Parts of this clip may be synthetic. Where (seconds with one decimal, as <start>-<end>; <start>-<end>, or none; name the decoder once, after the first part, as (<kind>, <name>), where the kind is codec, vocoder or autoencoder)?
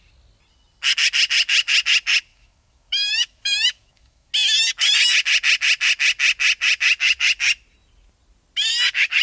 2.3-4.3 (autoencoder, DAC-VAE)